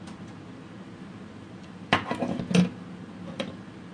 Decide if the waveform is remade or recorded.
recorded